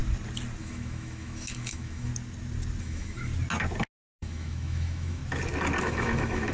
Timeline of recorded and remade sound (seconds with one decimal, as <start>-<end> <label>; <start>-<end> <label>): 0.0-0.6 recorded; 0.6-2.1 remade; 2.1-2.8 recorded; 2.8-3.3 remade; 3.3-4.2 recorded; 4.2-5.2 remade; 5.2-5.8 recorded; 5.8-6.5 remade

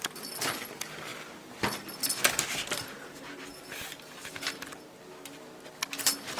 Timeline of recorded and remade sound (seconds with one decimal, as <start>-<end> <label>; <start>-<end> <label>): 0.0-6.4 recorded